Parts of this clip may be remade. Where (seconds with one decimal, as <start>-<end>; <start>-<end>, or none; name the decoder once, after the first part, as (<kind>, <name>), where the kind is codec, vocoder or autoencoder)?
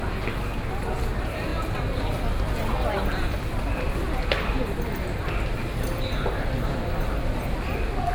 none